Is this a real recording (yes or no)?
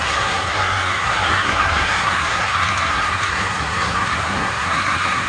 no